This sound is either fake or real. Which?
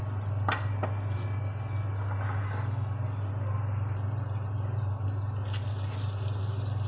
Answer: real